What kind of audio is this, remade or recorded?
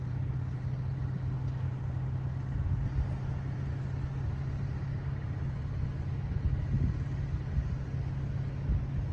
recorded